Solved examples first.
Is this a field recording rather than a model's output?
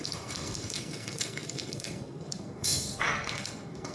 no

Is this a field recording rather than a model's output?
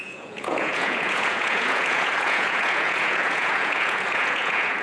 no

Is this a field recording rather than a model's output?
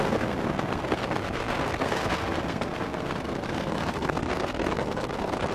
no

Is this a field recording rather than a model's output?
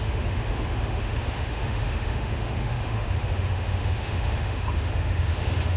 no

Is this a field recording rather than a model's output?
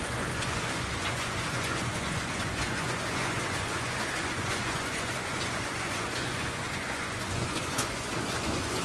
no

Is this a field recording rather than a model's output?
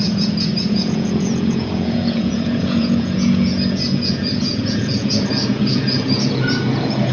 no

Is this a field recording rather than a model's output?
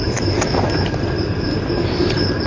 no